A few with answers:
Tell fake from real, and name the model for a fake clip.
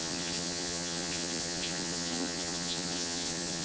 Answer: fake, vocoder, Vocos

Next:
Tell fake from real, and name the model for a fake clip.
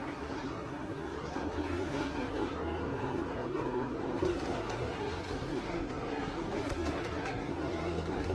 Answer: fake, codec, SNAC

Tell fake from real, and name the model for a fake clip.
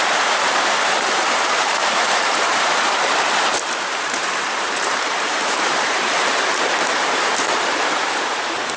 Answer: fake, vocoder, BigVGAN v2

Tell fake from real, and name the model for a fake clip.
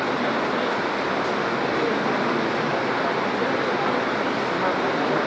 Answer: real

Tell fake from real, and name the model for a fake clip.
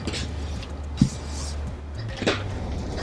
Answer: real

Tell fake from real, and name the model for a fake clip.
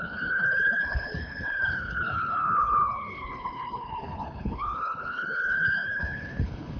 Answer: fake, codec, HILCodec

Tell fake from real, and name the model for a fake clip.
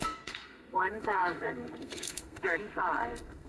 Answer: fake, codec, SNAC